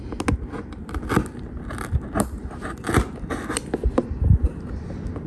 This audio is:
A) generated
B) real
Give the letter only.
B